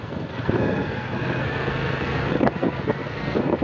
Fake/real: fake